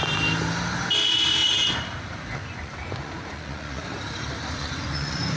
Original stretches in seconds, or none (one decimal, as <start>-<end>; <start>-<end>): 0.0-2.3; 4.0-4.6